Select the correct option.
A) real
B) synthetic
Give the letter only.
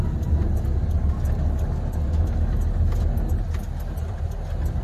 A